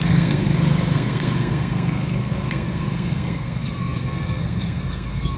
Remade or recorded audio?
remade